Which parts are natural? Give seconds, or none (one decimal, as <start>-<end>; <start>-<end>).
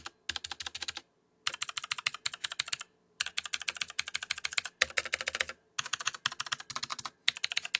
0.0-2.4; 5.4-6.9